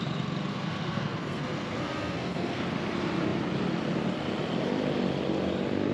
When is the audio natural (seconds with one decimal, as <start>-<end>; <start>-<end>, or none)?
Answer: 0.0-0.5; 2.6-5.9